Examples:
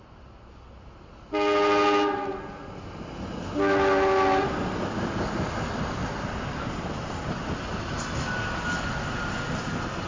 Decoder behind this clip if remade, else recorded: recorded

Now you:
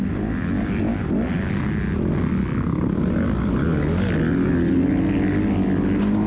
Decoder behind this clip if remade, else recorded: recorded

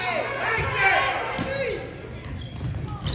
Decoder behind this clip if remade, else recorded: recorded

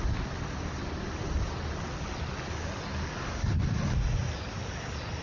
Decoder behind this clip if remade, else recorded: recorded